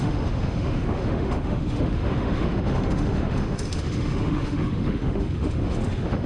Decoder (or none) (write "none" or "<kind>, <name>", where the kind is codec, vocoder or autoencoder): autoencoder, DAC-VAE